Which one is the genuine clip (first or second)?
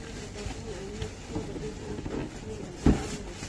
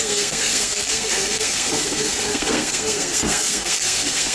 first